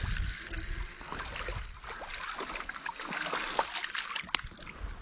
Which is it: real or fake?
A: real